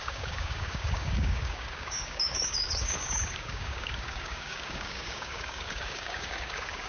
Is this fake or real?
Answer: fake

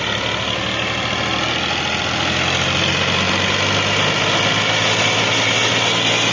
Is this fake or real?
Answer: real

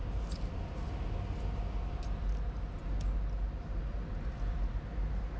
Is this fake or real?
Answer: real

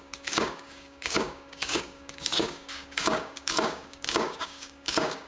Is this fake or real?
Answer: fake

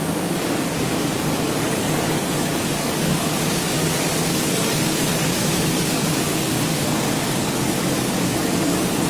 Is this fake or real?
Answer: fake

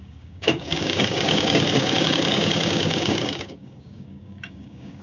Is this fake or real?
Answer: fake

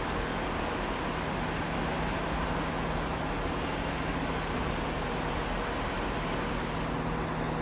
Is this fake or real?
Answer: real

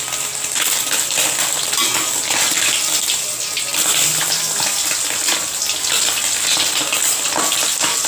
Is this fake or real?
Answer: real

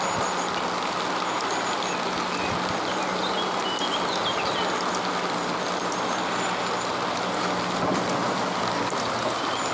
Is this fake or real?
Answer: real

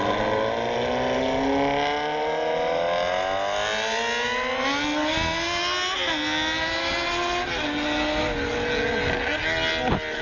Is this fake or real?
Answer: real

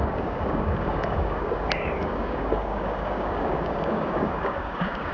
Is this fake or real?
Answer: fake